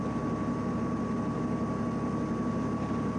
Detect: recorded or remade recorded